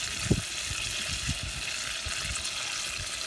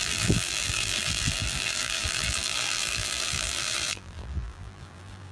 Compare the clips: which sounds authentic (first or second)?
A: first